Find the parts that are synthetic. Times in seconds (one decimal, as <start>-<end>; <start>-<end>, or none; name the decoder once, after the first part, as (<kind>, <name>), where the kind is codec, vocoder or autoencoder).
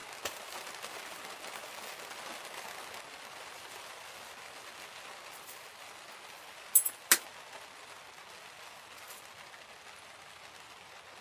none